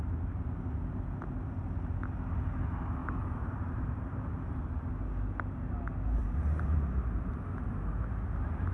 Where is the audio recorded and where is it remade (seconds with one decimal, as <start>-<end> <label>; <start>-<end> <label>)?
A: 0.0-3.0 recorded; 3.0-4.6 remade; 4.6-6.2 recorded; 6.2-7.0 remade; 7.0-8.7 recorded